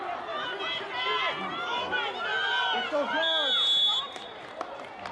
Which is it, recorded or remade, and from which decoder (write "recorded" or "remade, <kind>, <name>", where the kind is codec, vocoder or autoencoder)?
recorded